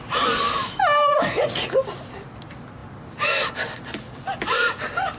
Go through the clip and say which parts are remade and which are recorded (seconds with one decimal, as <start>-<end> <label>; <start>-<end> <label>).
0.0-0.6 recorded; 0.6-1.4 remade; 1.4-5.2 recorded

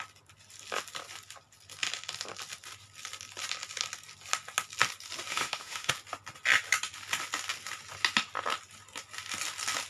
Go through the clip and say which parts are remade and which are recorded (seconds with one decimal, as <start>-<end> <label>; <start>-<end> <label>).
0.0-5.3 recorded; 5.3-5.9 remade; 5.9-9.9 recorded

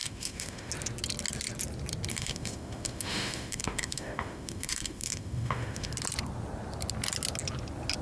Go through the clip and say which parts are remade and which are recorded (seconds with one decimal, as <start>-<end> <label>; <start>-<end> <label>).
0.0-0.7 remade; 0.7-2.1 recorded; 2.1-5.9 remade; 5.9-8.0 recorded

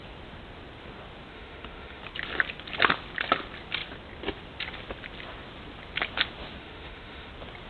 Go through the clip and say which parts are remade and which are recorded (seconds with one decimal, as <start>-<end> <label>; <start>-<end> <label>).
0.0-1.3 recorded; 1.3-2.0 remade; 2.0-6.6 recorded; 6.6-7.3 remade; 7.3-7.7 recorded